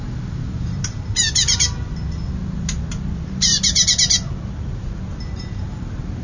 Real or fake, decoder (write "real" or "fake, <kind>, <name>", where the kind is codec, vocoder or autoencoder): real